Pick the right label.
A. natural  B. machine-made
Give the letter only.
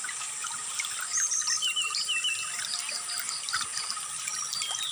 A